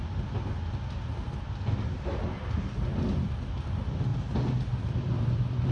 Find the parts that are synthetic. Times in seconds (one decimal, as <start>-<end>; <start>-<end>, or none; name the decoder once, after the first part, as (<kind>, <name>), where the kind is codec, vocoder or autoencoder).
4.1-5.7 (vocoder, BigVGAN v2)